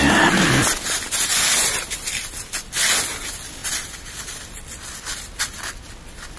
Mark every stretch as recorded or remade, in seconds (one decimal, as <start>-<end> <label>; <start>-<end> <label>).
0.0-6.4 recorded